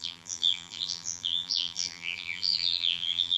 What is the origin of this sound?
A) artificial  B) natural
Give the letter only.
A